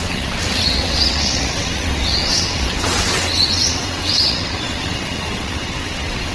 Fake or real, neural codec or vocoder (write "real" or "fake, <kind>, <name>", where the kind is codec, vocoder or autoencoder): fake, vocoder, WaveNeXt